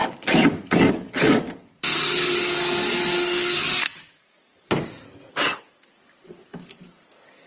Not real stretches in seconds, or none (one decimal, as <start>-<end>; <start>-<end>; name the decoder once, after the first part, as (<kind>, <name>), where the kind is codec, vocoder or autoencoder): 0.0-4.5 (codec, DAC); 5.3-7.5